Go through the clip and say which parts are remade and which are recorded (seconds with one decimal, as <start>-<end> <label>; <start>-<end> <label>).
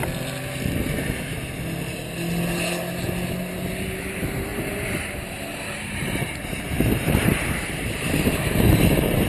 0.0-4.0 recorded; 4.0-9.3 remade